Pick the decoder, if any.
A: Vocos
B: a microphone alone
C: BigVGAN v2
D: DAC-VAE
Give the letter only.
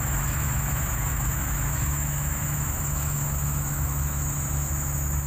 D